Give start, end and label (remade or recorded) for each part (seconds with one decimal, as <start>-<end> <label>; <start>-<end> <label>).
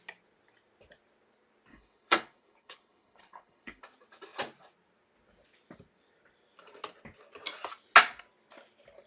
0.0-1.7 recorded; 1.7-3.8 remade; 3.8-9.1 recorded